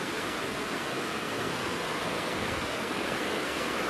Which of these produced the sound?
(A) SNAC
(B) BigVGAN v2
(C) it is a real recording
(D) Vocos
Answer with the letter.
A